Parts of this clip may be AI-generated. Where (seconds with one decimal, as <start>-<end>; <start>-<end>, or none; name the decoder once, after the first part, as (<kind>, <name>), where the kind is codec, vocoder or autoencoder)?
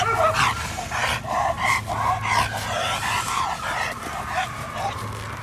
none